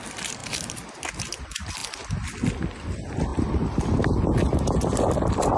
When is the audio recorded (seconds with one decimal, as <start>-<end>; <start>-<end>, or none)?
0.0-5.6

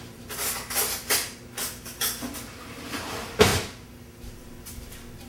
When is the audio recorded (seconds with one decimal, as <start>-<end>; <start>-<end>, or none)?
0.0-5.3